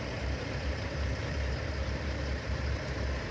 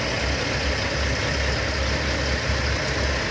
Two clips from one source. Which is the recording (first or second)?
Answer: second